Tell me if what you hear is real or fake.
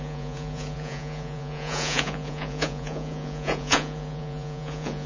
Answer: fake